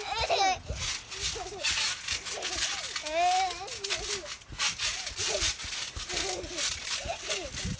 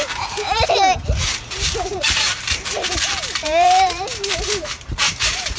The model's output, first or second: second